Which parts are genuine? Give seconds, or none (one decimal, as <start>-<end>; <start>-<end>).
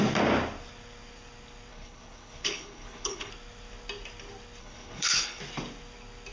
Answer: 0.0-1.7; 3.3-4.6; 5.4-6.3